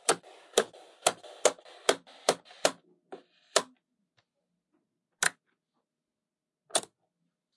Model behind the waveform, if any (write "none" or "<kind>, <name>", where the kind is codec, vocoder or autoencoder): none